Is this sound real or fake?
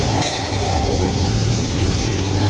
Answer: fake